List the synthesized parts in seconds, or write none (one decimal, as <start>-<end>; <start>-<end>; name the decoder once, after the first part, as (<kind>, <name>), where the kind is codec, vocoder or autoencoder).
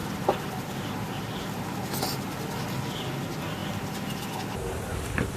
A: 0.0-0.9 (vocoder, BigVGAN v2)